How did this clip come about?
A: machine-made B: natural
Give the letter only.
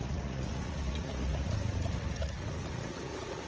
A